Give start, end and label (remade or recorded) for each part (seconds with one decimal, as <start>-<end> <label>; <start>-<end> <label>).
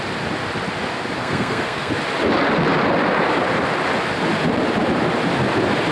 0.0-1.2 recorded; 1.2-1.9 remade; 1.9-5.9 recorded